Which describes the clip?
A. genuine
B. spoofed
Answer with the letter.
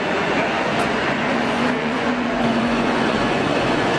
B